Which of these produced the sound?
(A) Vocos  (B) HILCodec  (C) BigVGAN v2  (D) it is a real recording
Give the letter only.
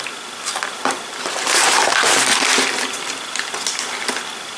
D